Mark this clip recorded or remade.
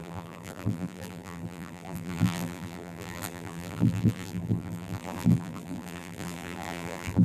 remade